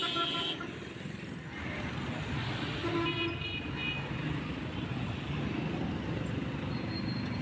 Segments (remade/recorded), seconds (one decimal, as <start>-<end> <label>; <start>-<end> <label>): 0.0-7.4 recorded